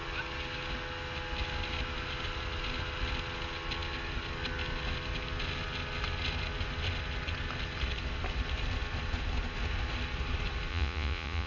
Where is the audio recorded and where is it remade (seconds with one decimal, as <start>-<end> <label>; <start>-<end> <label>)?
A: 0.0-10.7 recorded; 10.7-11.5 remade